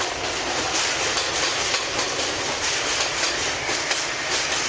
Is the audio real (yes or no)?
yes